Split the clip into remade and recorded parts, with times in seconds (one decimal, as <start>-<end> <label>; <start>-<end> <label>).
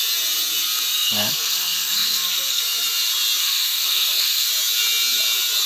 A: 0.0-0.9 recorded; 0.9-2.6 remade; 2.6-3.4 recorded; 3.4-4.5 remade; 4.5-5.7 recorded